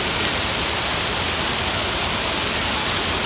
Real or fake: real